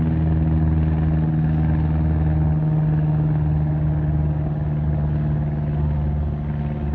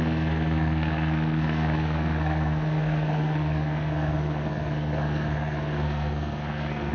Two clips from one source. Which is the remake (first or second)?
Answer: second